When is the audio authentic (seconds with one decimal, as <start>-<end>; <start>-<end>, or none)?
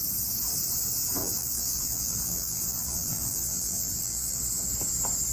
0.0-1.2; 4.4-5.3